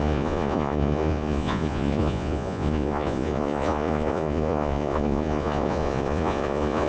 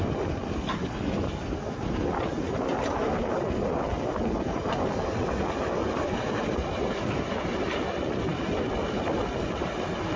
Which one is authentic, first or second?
second